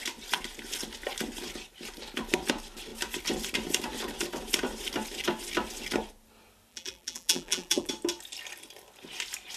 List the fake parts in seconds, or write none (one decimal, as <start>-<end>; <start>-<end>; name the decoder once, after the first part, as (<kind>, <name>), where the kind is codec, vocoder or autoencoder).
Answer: 6.7-7.9 (vocoder, BigVGAN v2)